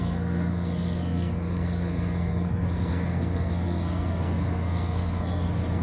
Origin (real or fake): fake